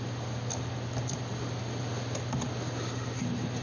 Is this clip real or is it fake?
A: real